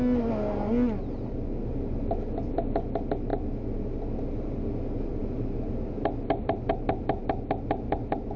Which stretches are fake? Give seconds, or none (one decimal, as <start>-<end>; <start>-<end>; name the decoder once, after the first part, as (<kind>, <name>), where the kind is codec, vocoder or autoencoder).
none